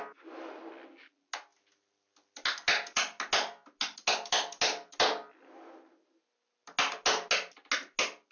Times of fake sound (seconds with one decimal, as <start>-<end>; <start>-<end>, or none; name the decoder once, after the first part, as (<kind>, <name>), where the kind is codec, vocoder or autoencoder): none